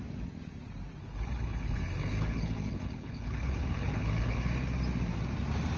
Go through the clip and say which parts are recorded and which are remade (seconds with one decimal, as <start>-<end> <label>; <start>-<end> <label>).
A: 0.0-1.0 recorded; 1.0-4.5 remade; 4.5-5.8 recorded